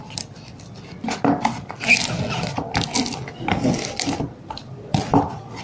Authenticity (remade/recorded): recorded